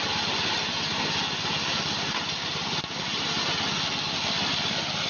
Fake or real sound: real